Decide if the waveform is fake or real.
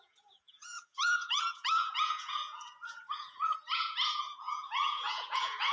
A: fake